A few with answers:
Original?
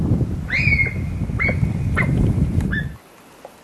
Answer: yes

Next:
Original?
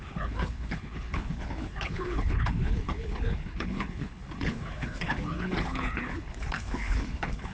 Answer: no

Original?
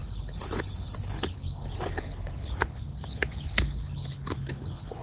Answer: no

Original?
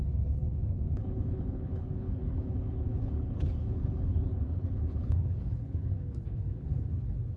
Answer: no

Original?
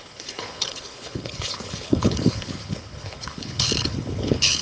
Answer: no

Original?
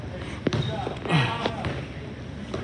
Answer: yes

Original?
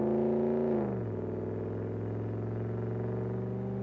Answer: yes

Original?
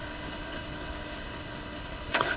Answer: no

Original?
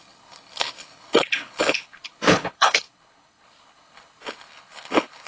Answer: no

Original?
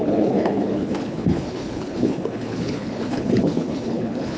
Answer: no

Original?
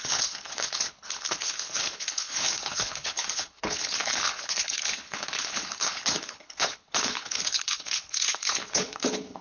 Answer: no